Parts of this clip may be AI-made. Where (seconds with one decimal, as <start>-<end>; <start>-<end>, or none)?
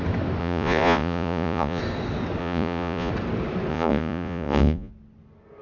0.4-1.8; 2.4-3.1; 3.7-4.9